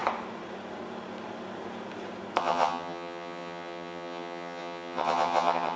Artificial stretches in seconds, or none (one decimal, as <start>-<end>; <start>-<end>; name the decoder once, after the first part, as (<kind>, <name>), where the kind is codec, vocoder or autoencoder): 2.4-5.8 (vocoder, HiFi-GAN)

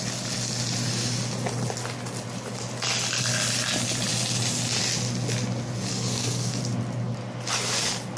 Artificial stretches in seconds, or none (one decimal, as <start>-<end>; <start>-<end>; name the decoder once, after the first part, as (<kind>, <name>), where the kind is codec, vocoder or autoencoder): 5.9-6.6 (codec, SNAC)